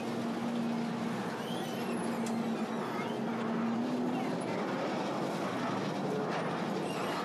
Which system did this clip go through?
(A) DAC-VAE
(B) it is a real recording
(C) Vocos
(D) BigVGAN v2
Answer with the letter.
B